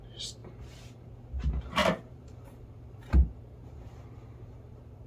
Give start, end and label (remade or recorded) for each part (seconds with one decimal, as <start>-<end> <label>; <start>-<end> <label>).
0.0-0.4 recorded; 0.4-1.1 remade; 1.1-1.8 recorded; 1.8-5.1 remade